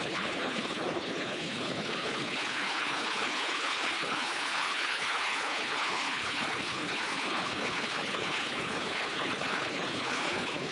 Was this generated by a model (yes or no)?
yes